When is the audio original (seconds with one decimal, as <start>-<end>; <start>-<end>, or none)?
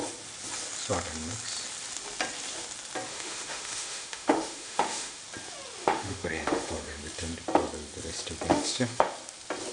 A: 0.0-3.1; 5.2-5.8; 7.0-8.5; 9.1-9.7